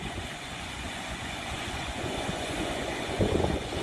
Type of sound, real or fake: fake